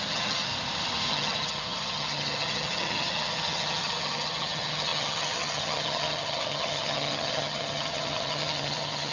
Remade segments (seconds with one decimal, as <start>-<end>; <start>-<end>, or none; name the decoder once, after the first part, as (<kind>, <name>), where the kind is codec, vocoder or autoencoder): 0.0-0.5 (vocoder, HiFi-GAN); 1.1-9.1